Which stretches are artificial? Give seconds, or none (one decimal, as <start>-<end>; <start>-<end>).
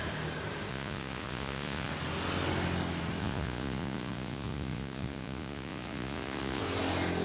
0.7-1.9; 3.2-6.6